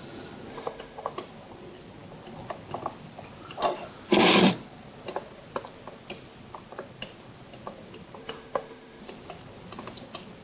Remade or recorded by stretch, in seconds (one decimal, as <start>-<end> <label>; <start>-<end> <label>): 0.0-0.5 recorded; 0.5-1.1 remade; 1.1-8.2 recorded; 8.2-9.0 remade; 9.0-10.4 recorded